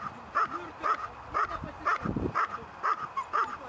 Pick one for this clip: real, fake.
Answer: real